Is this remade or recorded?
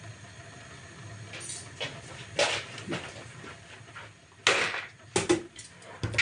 recorded